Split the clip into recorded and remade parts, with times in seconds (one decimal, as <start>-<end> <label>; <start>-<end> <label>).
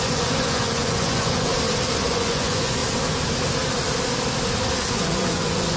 0.0-1.5 remade; 1.5-2.1 recorded; 2.1-2.8 remade; 2.8-4.9 recorded; 4.9-5.8 remade